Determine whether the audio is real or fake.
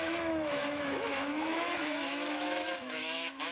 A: fake